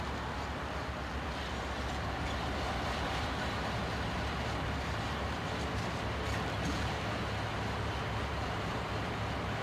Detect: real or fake real